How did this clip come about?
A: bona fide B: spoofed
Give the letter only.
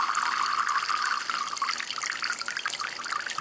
A